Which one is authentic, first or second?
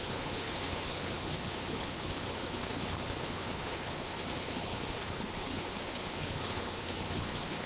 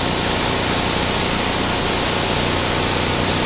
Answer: second